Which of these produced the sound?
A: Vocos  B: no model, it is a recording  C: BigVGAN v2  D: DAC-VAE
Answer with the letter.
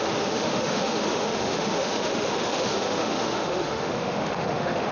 D